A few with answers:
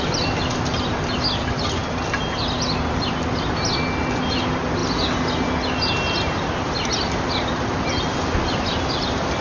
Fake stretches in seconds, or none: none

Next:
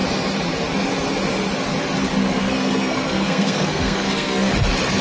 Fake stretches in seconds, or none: 2.2-4.5 (codec, SNAC)

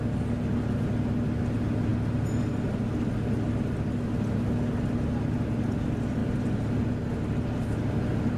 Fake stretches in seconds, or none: none

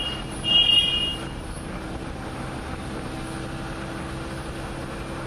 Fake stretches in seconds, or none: none

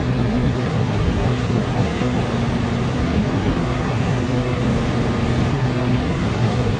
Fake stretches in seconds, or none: 0.0-2.2 (codec, SNAC); 2.9-4.7; 5.5-6.8

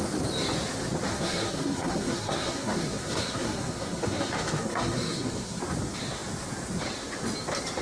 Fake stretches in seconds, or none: 1.1-5.6 (codec, SNAC)

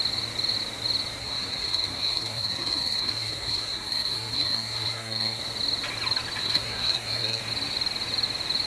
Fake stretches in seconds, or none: 1.2-5.4 (codec, SNAC); 6.4-7.4

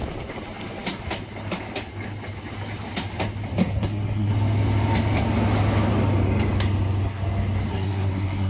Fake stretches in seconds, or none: 3.6-4.3 (codec, SNAC); 7.7-8.5